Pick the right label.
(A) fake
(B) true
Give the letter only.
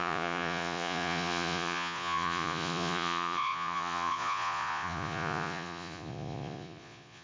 A